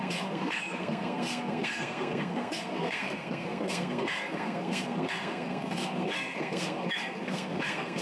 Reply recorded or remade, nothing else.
remade